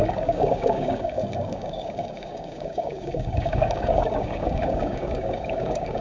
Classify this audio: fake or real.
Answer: fake